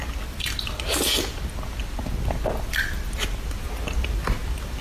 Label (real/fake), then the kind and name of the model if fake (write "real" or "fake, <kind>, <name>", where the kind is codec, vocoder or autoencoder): real